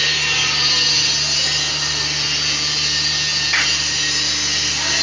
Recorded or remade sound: recorded